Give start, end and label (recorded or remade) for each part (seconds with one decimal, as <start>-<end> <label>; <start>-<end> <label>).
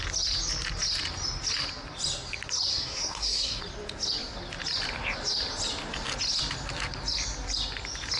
0.0-2.7 recorded; 2.7-3.6 remade; 3.6-8.2 recorded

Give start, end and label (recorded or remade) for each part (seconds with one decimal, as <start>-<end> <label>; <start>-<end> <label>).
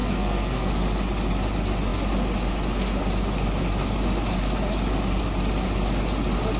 0.0-0.7 remade; 0.7-6.6 recorded